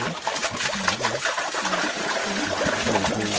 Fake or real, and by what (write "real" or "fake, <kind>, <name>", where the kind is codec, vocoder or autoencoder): real